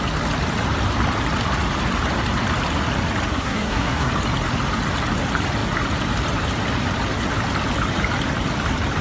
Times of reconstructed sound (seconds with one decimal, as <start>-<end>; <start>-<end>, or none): 3.3-4.1